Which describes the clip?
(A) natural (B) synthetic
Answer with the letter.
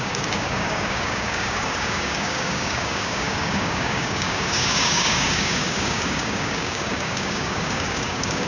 B